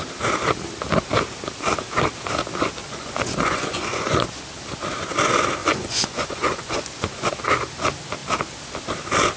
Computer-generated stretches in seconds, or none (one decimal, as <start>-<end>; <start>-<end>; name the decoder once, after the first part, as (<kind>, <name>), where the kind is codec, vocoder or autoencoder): 2.8-4.4 (vocoder, Vocos); 5.6-7.3